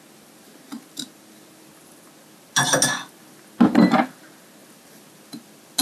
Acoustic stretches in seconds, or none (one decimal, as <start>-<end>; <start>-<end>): 0.0-5.8